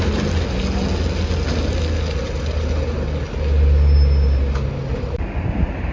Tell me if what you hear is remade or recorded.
recorded